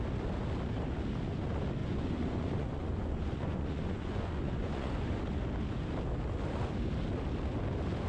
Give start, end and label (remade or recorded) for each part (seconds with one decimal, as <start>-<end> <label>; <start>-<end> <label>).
0.0-1.8 recorded; 1.8-5.2 remade; 5.2-8.1 recorded